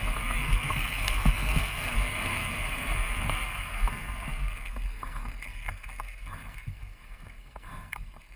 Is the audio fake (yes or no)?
yes